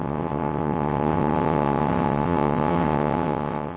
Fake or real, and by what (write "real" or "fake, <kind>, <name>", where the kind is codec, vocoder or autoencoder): fake, vocoder, WaveNeXt